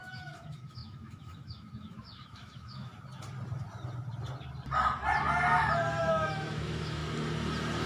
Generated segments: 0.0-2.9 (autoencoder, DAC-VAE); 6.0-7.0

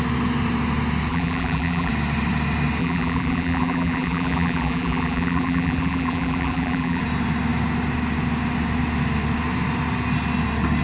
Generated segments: 1.1-1.9 (vocoder, BigVGAN v2); 2.8-7.0

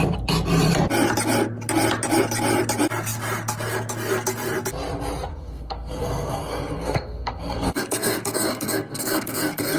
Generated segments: 5.3-9.8 (codec, SNAC)

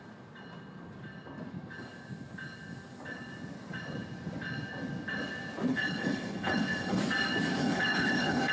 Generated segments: 5.7-7.0 (codec, HILCodec); 7.6-8.5

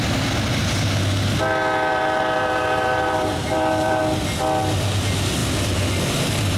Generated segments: 1.9-4.0 (vocoder, BigVGAN v2)

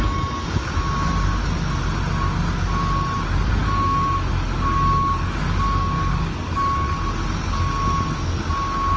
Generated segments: 3.6-6.9 (codec, DAC)